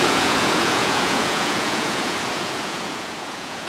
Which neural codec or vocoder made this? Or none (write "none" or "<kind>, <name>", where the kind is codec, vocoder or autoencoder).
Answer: vocoder, Vocos